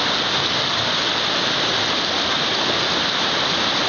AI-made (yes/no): no